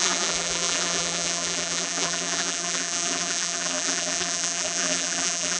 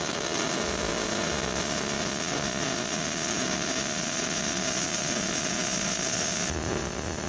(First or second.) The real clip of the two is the second